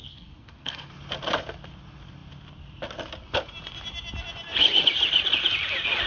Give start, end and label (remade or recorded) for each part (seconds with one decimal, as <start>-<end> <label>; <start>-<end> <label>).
0.0-0.9 remade; 0.9-6.1 recorded